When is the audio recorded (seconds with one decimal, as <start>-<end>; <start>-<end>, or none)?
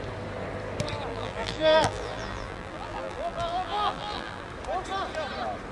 0.0-1.1; 4.5-5.7